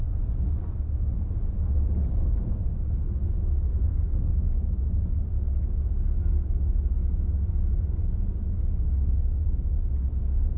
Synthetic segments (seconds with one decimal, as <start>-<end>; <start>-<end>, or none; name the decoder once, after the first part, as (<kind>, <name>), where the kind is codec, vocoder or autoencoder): 3.7-4.3 (codec, SNAC)

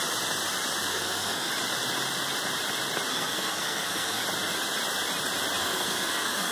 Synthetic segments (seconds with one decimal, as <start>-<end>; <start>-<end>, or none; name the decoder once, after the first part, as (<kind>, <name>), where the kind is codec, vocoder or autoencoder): 0.9-1.5 (codec, SNAC); 3.1-4.2; 5.6-6.5

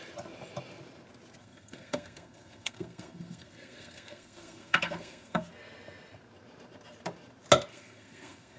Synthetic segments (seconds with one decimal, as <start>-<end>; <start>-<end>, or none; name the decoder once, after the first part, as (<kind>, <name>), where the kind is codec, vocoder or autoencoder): 1.4-5.5 (codec, SNAC); 7.7-8.6